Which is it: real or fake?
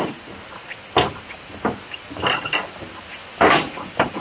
real